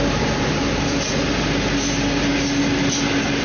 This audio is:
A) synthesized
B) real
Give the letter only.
B